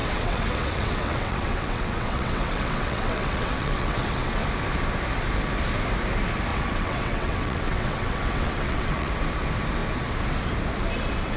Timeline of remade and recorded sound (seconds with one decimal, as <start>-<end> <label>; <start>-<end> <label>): 0.0-4.4 remade; 4.4-6.5 recorded; 6.5-9.1 remade; 9.1-11.4 recorded